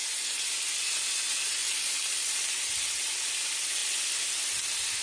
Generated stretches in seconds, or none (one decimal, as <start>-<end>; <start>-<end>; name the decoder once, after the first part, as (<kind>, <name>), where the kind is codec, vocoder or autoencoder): none